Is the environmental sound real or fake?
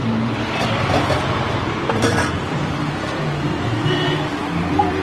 fake